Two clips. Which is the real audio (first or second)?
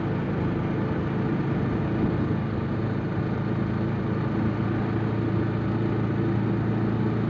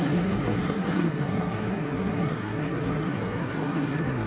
first